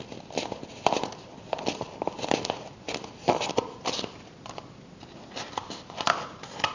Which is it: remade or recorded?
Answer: recorded